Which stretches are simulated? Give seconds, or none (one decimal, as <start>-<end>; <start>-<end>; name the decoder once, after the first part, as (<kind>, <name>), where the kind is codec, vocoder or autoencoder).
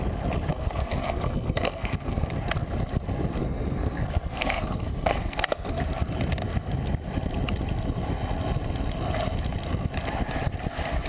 0.5-2.3 (codec, SNAC); 3.4-5.8